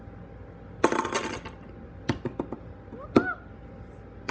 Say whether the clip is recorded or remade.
recorded